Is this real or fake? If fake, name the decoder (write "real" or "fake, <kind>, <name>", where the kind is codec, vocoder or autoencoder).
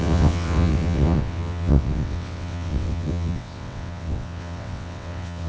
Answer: fake, vocoder, WaveNeXt